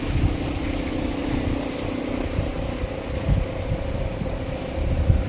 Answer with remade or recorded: recorded